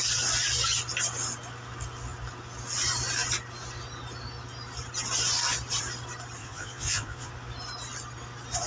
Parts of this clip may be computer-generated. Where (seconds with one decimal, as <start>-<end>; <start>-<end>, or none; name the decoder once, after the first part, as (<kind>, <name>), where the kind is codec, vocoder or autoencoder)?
6.4-7.3 (vocoder, Vocos)